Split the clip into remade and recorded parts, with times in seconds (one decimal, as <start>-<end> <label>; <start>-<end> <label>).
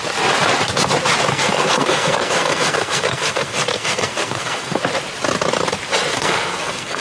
0.0-1.3 recorded; 1.3-4.8 remade; 4.8-6.1 recorded; 6.1-7.0 remade